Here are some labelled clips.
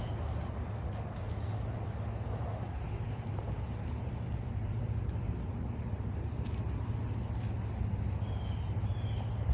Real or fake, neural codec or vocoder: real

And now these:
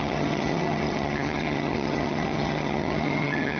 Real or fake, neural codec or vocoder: fake, vocoder, HiFi-GAN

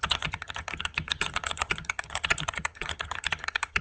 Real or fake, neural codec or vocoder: fake, vocoder, HiFi-GAN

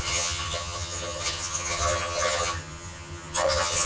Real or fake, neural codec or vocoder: fake, vocoder, HiFi-GAN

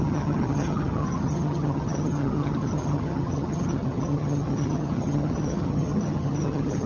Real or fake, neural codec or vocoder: fake, vocoder, HiFi-GAN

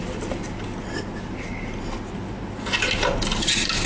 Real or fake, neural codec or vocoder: real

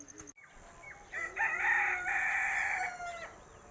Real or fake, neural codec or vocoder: real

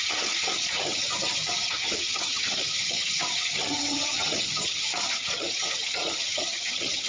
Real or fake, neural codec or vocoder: fake, vocoder, HiFi-GAN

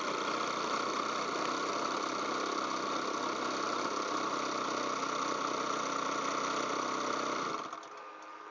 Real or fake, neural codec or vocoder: real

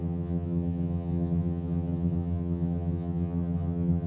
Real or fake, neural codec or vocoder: fake, vocoder, HiFi-GAN